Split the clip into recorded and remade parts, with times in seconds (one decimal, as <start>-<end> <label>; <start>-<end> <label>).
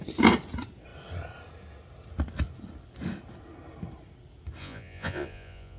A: 0.0-4.6 recorded; 4.6-5.8 remade